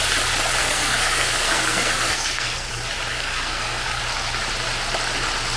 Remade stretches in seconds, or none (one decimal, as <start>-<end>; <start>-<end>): 0.6-2.7; 3.1-4.0